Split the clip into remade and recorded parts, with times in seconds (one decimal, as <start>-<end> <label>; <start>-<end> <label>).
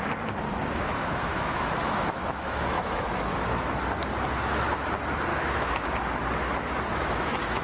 0.0-1.0 recorded; 1.0-4.0 remade; 4.0-5.3 recorded; 5.3-6.2 remade; 6.2-6.9 recorded; 6.9-7.6 remade